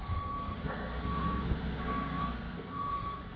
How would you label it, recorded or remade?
remade